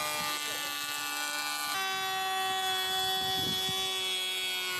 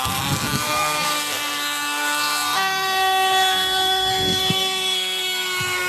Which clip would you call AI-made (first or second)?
second